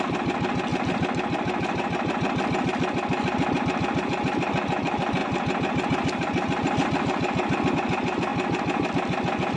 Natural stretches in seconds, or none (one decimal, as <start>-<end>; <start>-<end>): 0.0-9.6